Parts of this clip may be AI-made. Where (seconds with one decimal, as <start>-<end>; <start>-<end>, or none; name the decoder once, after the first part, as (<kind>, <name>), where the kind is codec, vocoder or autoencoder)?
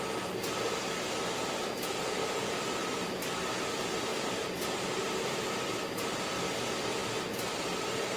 2.8-3.3 (vocoder, BigVGAN v2); 4.1-5.8